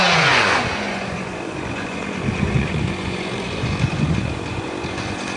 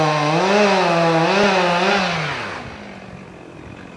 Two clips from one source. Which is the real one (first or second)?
second